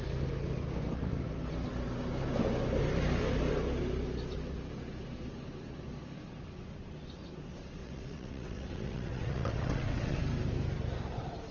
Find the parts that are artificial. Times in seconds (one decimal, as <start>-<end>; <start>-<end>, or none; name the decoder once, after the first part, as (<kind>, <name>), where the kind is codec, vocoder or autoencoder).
7.8-10.2 (vocoder, WaveNeXt)